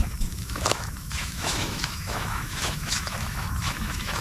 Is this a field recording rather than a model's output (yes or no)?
no